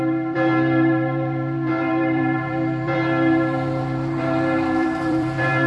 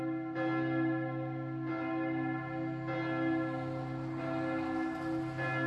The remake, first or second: first